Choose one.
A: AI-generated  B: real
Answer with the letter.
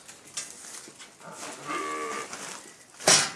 B